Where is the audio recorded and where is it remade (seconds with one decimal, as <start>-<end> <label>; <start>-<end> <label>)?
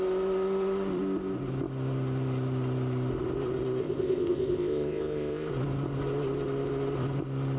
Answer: 0.0-3.8 recorded; 3.8-5.5 remade; 5.5-7.6 recorded